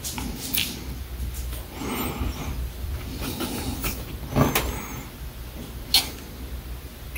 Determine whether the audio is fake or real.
real